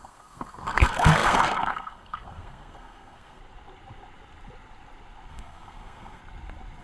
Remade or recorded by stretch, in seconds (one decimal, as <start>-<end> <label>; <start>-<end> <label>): 0.0-3.4 remade; 3.4-5.3 recorded; 5.3-6.2 remade; 6.2-6.8 recorded